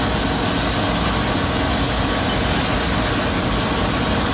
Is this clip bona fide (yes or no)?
yes